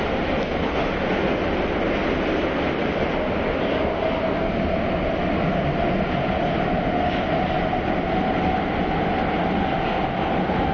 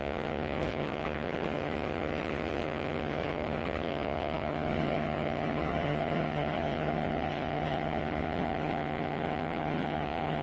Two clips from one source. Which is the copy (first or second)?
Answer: second